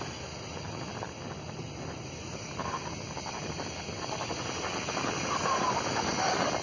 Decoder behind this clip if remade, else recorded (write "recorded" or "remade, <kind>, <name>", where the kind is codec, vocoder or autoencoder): recorded